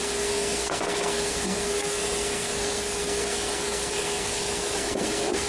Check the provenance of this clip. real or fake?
fake